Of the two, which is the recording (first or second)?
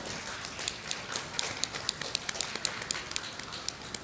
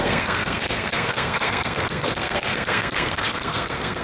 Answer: first